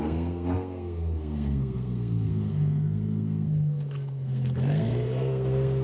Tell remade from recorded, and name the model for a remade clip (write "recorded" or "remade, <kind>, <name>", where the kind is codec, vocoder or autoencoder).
remade, codec, SNAC